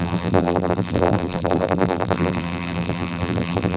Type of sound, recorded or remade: remade